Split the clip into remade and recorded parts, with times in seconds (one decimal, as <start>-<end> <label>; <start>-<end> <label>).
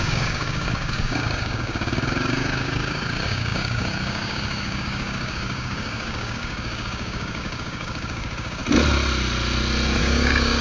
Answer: 0.0-8.6 remade; 8.6-10.0 recorded; 10.0-10.6 remade